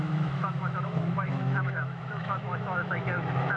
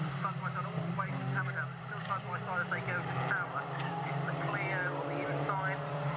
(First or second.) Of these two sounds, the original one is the second